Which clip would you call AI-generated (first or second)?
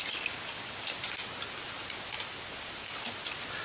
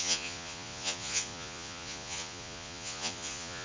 second